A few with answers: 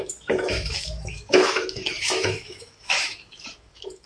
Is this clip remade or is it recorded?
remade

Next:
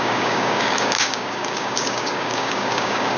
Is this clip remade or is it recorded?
remade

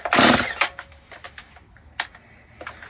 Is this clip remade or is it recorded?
recorded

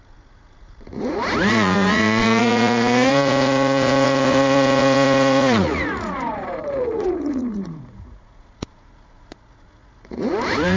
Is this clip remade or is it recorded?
remade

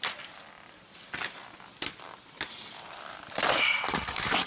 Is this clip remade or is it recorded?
recorded